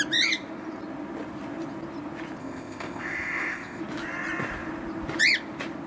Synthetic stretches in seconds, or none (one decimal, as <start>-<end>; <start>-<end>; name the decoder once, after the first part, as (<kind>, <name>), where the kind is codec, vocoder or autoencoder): 2.4-3.8 (codec, ZipCodec)